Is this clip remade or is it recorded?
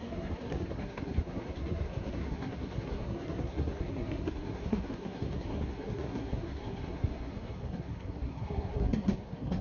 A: remade